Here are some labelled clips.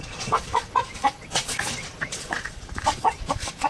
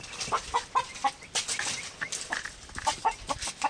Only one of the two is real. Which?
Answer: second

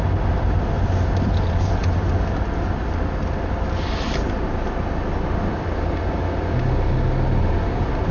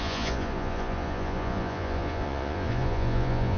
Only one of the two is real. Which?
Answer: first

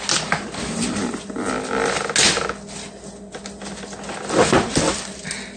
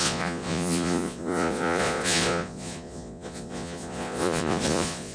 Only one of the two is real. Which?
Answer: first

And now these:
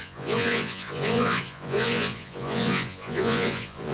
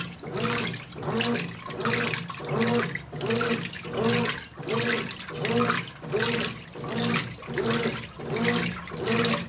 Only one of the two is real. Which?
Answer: second